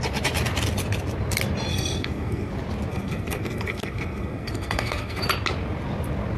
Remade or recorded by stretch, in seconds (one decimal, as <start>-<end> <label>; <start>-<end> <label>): 0.0-1.7 recorded; 1.7-2.5 remade; 2.5-2.9 recorded; 2.9-5.2 remade; 5.2-6.4 recorded